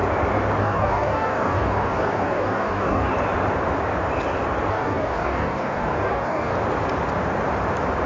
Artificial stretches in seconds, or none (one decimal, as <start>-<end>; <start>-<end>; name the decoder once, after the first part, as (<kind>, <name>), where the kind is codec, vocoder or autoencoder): 0.6-3.1 (codec, DAC); 4.7-6.5